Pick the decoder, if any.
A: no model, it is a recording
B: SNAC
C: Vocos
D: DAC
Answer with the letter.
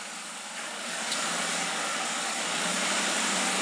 D